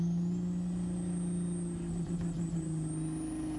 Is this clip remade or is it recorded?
recorded